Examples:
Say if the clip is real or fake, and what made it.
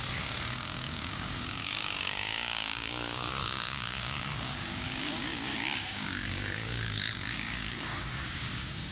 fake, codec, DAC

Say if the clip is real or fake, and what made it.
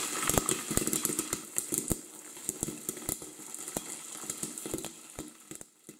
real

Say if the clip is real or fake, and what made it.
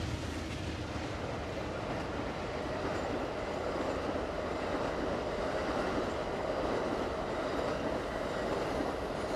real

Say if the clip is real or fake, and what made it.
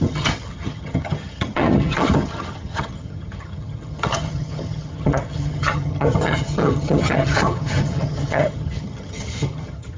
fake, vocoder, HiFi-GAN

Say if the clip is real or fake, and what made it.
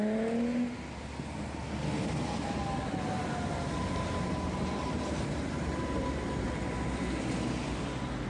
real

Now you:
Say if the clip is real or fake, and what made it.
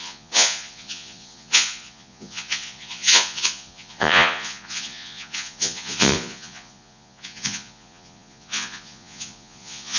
fake, vocoder, Vocos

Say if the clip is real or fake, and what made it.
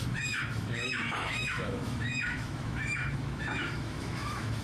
fake, autoencoder, DAC-VAE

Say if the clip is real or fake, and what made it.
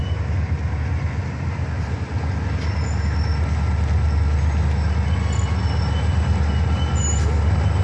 real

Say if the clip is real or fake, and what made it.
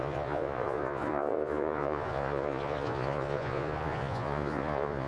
fake, vocoder, Vocos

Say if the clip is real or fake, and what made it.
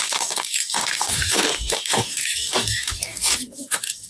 fake, codec, DAC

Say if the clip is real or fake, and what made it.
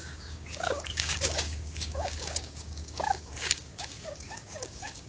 fake, codec, DAC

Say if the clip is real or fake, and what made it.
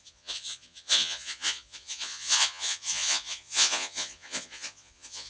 fake, vocoder, Vocos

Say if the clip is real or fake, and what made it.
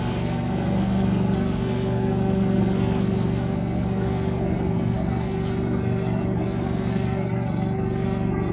fake, codec, SNAC